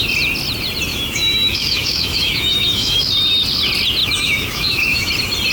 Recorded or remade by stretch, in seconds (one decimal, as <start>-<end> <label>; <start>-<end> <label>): 0.0-0.9 recorded; 0.9-3.1 remade; 3.1-4.0 recorded; 4.0-5.1 remade; 5.1-5.5 recorded